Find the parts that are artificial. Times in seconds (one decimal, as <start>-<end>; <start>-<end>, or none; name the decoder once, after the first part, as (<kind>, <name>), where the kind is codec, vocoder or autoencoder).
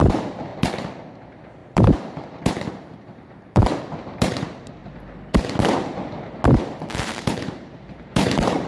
0.0-0.5 (vocoder, BigVGAN v2); 1.1-4.8; 6.8-8.7